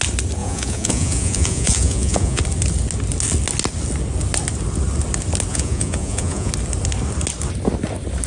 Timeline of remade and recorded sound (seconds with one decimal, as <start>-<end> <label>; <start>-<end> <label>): 0.0-0.4 recorded; 0.4-2.4 remade; 2.4-5.5 recorded; 5.5-6.5 remade; 6.5-8.3 recorded